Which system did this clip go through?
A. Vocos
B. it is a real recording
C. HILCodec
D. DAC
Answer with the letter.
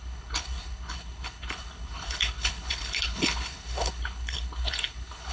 C